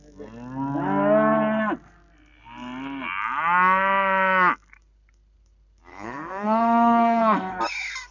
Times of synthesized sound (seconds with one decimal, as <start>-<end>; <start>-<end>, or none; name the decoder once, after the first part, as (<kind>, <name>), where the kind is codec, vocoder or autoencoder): 5.9-7.6 (codec, SNAC)